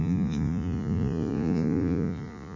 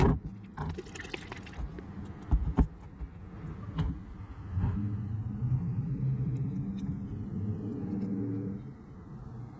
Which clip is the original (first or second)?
second